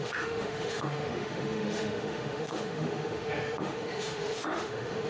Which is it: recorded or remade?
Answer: remade